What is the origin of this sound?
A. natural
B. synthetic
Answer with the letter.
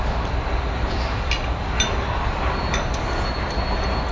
A